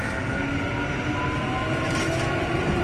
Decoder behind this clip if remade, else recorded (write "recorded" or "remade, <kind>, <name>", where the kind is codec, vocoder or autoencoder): recorded